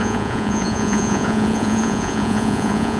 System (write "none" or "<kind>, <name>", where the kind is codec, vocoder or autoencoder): vocoder, Vocos